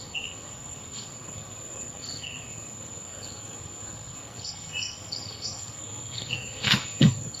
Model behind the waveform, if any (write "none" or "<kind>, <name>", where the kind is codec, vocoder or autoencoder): codec, SNAC